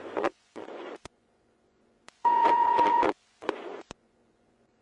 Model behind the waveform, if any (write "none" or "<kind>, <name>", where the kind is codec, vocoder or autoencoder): vocoder, Vocos